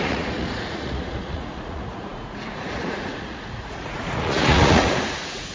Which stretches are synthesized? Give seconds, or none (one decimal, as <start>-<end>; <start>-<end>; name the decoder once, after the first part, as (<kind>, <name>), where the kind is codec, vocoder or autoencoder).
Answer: 0.0-5.5 (vocoder, Vocos)